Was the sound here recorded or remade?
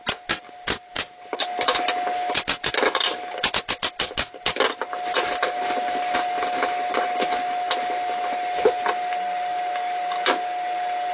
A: recorded